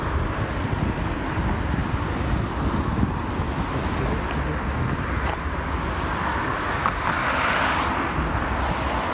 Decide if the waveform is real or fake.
real